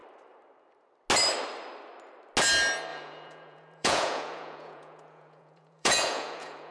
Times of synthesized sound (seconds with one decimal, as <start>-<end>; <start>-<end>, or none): 2.9-6.7